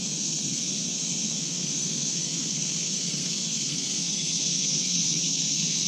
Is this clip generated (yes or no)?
yes